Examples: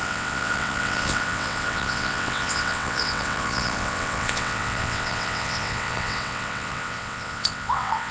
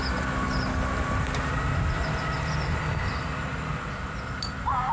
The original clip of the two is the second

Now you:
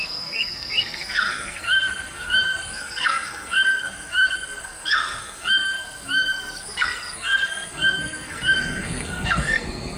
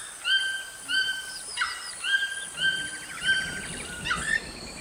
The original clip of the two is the second